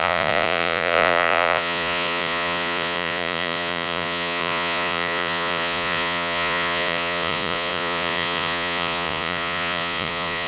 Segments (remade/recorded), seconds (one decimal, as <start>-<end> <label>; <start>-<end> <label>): 0.0-10.5 remade